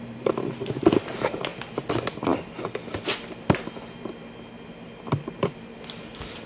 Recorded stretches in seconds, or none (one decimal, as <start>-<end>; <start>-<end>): 1.5-5.4